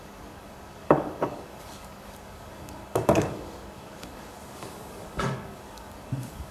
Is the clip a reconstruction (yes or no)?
yes